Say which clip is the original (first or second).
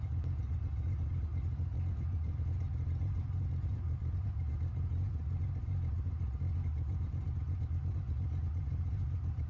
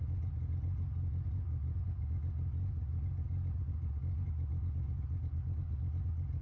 second